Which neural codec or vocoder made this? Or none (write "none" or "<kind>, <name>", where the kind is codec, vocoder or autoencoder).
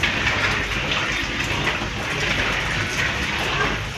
none